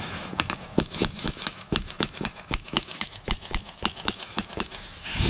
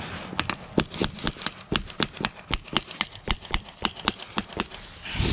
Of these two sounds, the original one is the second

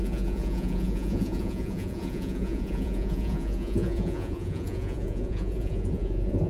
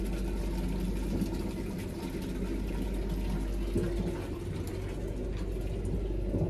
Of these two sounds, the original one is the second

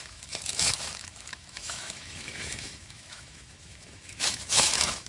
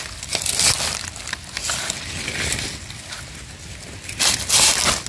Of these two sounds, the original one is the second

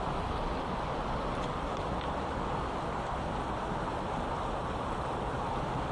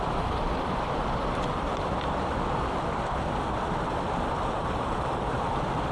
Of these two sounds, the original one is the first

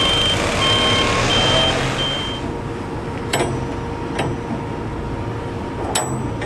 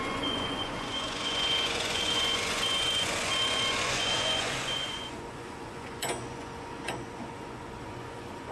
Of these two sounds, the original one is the first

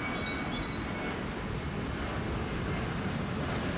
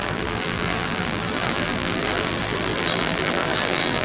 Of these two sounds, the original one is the first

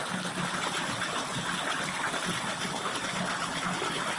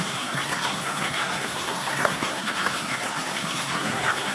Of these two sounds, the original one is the first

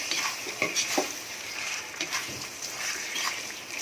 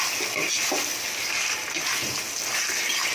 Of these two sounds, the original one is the second